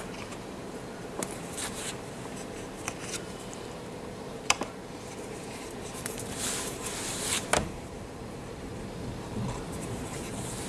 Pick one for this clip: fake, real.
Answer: fake